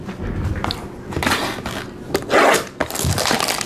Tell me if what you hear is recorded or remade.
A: recorded